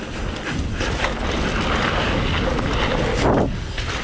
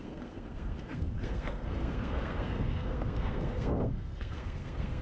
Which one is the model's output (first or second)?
second